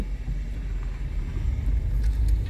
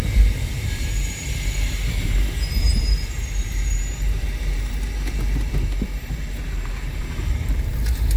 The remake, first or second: second